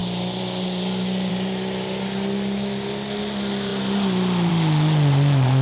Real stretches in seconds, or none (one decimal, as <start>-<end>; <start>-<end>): 0.0-5.6